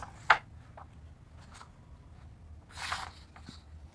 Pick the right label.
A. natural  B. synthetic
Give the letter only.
A